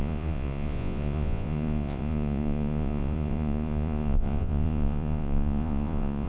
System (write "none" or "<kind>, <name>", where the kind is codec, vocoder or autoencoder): vocoder, Vocos